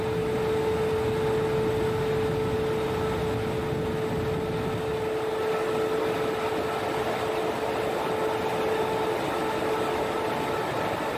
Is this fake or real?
real